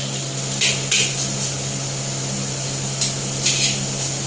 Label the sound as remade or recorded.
recorded